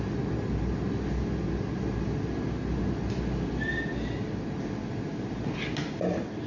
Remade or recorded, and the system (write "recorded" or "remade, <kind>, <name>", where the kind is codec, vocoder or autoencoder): recorded